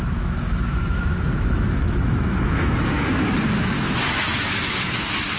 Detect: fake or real fake